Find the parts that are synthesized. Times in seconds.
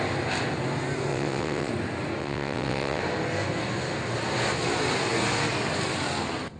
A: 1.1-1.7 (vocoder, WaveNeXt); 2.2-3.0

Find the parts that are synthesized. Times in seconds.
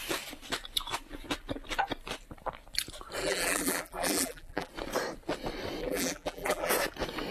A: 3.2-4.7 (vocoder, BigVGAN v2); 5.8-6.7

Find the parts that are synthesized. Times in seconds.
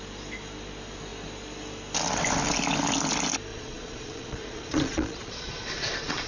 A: 3.5-6.3 (vocoder, Vocos)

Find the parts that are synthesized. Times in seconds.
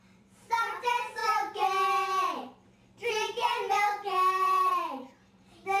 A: 0.0-1.2 (vocoder, BigVGAN v2); 4.7-5.8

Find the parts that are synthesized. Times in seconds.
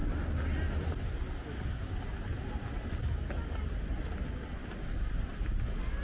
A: none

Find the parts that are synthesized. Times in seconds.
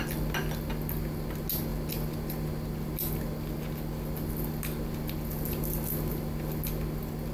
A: none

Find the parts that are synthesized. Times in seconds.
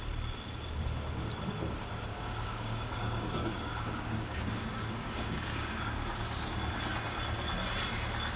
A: 2.1-5.8 (codec, DAC)